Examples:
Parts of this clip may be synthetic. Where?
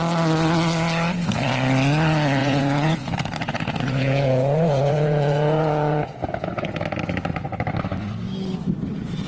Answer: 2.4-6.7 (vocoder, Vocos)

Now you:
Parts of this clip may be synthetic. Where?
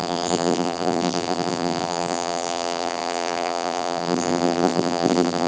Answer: 0.0-5.5 (vocoder, BigVGAN v2)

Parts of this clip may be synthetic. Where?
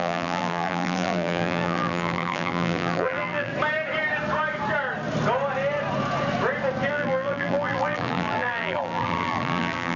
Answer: 0.0-3.5 (vocoder, BigVGAN v2); 6.9-10.0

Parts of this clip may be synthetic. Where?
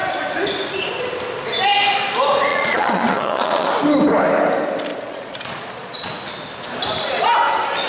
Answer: 2.5-3.7 (vocoder, Vocos); 4.9-6.1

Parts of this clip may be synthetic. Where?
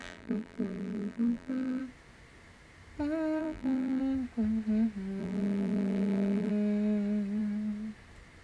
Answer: 0.0-1.8 (vocoder, BigVGAN v2); 3.4-4.0; 5.2-6.5